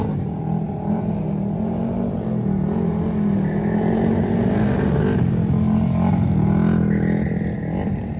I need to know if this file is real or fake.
real